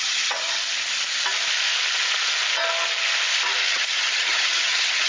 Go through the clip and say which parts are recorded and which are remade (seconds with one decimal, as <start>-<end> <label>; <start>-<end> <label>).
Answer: 0.0-0.6 remade; 0.6-3.7 recorded; 3.7-5.1 remade